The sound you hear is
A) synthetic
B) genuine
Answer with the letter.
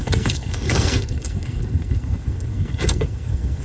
A